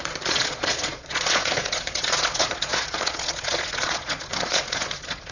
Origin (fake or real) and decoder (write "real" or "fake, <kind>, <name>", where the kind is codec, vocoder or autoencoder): fake, vocoder, Vocos